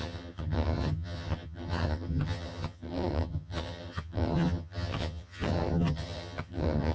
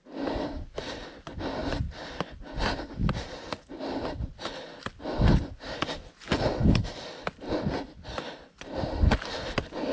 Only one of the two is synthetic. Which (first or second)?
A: first